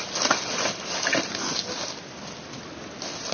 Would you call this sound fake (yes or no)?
no